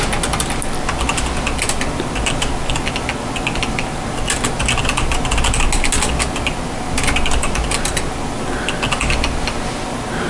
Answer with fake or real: real